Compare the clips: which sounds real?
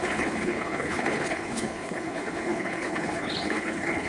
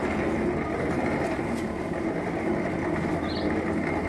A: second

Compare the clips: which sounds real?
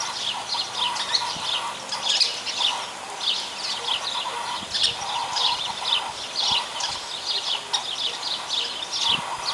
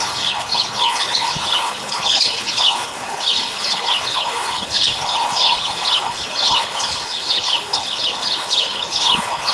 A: first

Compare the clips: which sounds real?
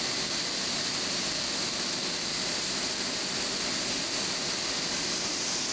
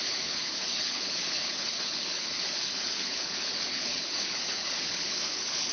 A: first